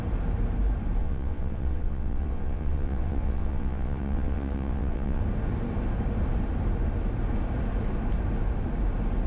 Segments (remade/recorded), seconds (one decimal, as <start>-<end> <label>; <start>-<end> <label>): 0.0-1.0 recorded; 1.0-5.2 remade; 5.2-9.3 recorded